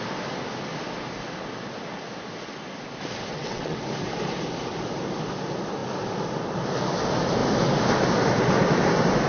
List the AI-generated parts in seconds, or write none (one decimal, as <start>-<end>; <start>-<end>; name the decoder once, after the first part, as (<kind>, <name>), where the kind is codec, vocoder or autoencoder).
3.3-3.8 (vocoder, WaveNeXt)